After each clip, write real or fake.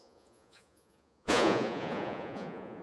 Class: fake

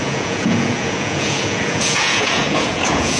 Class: fake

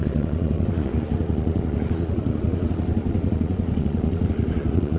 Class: fake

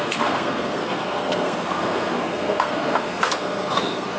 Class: fake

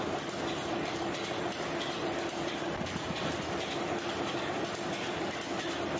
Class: fake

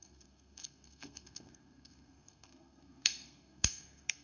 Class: fake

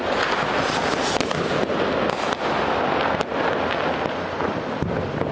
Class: real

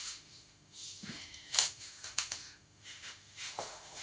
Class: fake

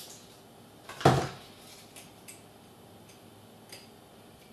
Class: real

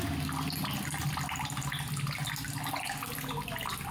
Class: real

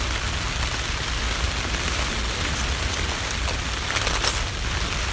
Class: real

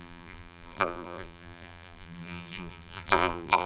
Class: fake